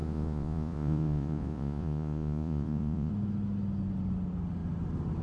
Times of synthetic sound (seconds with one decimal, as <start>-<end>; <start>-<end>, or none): 0.0-3.1

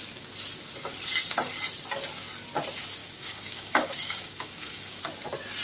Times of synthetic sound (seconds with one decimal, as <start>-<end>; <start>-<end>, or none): 3.0-5.0